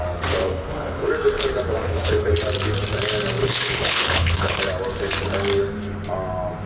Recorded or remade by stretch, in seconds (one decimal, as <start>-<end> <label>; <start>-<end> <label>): 0.0-0.4 recorded; 0.4-1.1 remade; 1.1-1.8 recorded; 1.8-2.3 remade; 2.3-3.4 recorded; 3.4-4.6 remade; 4.6-6.7 recorded

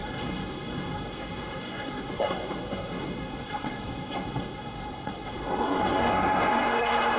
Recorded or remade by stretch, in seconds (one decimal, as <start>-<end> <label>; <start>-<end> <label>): 0.0-7.2 remade

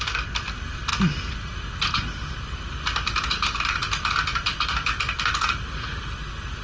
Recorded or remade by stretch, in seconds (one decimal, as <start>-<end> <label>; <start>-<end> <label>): 0.0-6.6 recorded

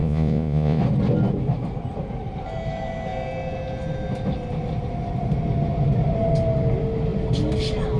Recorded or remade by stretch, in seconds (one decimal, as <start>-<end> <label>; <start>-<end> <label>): 0.0-0.8 remade; 0.8-8.0 recorded